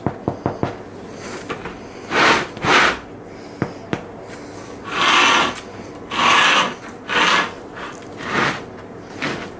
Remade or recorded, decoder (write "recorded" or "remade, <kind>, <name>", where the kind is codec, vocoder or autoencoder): recorded